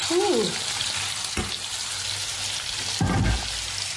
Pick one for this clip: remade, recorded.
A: recorded